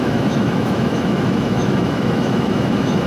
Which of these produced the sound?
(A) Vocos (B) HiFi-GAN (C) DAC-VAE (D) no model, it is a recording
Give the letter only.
C